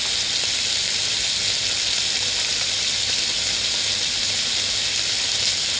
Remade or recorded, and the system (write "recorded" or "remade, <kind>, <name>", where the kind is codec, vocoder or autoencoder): recorded